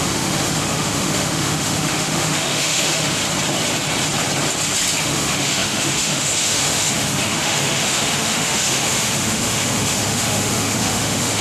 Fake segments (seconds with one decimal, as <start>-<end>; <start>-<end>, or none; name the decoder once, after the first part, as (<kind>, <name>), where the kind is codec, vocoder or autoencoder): 0.0-3.2 (autoencoder, DAC-VAE); 5.0-11.4